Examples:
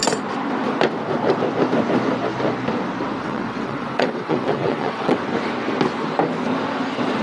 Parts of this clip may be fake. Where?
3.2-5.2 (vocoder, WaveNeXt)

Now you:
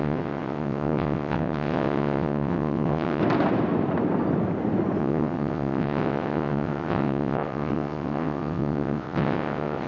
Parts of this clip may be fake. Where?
0.0-3.2 (vocoder, WaveNeXt); 5.0-9.9